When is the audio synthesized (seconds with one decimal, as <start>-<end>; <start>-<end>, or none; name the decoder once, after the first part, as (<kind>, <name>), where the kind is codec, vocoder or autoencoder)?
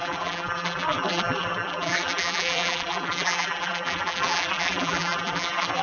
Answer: 0.0-5.8 (vocoder, BigVGAN v2)